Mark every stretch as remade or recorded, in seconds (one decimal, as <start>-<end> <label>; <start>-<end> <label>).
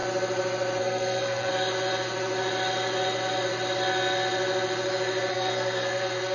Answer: 0.0-0.8 recorded; 0.8-1.5 remade; 1.5-5.3 recorded; 5.3-6.3 remade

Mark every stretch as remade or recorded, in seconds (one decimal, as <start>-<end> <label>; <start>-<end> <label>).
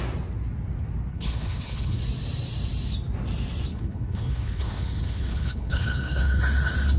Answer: 0.0-1.1 recorded; 1.1-2.0 remade; 2.0-3.7 recorded; 3.7-6.4 remade; 6.4-7.0 recorded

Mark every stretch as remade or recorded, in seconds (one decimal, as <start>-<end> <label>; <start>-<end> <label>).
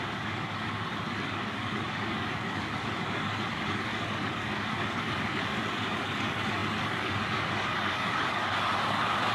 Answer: 0.0-9.3 remade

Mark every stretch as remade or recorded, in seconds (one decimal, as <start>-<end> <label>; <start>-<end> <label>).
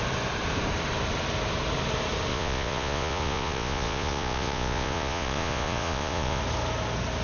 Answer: 0.0-2.3 recorded; 2.3-6.4 remade; 6.4-7.2 recorded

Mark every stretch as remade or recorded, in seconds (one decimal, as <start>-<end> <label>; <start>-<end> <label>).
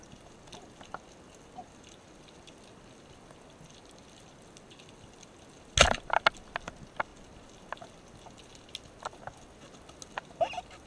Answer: 0.0-10.9 recorded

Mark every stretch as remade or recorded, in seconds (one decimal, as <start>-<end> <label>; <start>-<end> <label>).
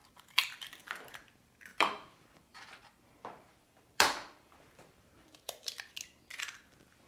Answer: 0.0-0.8 remade; 0.8-1.7 recorded; 1.7-5.9 remade; 5.9-7.1 recorded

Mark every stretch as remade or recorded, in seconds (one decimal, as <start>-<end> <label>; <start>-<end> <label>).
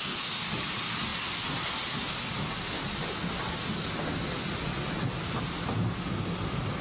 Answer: 0.0-6.8 recorded